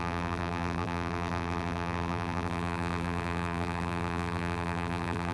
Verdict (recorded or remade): remade